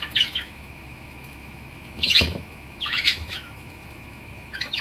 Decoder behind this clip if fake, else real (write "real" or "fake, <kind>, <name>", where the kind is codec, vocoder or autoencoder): fake, autoencoder, DAC-VAE